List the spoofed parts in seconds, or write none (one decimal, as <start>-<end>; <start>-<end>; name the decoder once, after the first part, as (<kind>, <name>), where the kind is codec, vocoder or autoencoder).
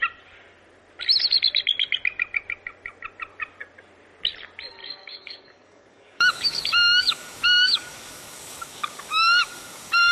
4.8-10.1 (codec, DAC)